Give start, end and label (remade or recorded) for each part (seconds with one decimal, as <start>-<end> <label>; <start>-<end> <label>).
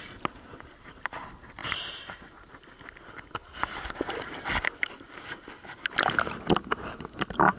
0.0-1.6 recorded; 1.6-2.5 remade; 2.5-7.6 recorded